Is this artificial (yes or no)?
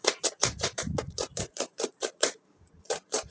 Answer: yes